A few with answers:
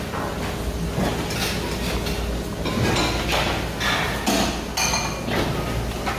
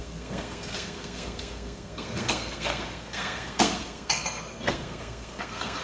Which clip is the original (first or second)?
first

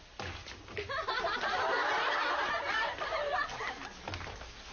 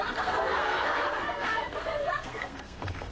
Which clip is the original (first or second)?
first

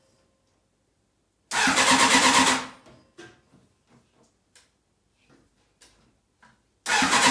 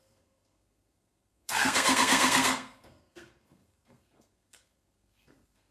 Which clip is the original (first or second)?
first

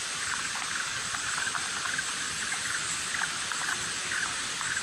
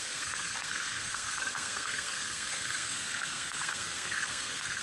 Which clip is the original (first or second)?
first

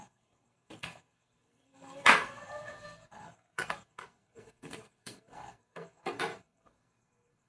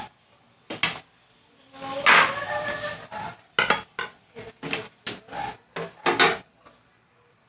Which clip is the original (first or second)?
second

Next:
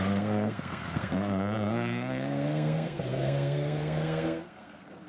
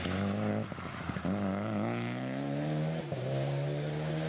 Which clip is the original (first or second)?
second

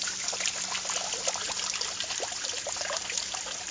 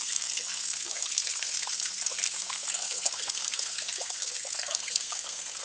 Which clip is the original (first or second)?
first